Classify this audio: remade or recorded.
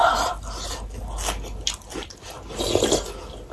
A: recorded